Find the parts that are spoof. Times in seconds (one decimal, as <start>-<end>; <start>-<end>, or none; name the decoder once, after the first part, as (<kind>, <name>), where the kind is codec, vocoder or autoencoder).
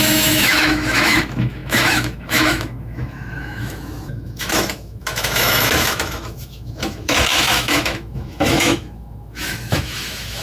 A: 0.0-10.4 (autoencoder, DAC-VAE)